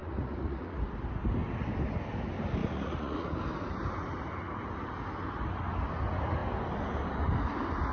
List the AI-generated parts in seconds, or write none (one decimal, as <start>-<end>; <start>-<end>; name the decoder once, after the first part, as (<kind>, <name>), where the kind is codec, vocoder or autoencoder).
0.0-0.8 (vocoder, Vocos); 2.6-3.4